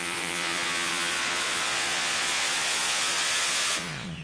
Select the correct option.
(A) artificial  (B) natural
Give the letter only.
A